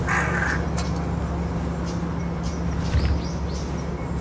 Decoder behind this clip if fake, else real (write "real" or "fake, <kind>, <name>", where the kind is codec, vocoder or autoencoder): real